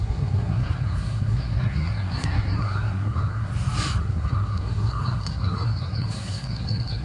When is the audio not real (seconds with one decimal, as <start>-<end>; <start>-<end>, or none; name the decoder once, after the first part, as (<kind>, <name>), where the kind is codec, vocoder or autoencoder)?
0.0-3.5 (codec, SNAC); 4.0-7.0